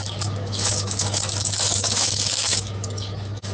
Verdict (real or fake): fake